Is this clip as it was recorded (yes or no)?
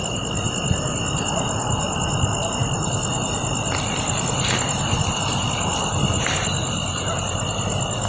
yes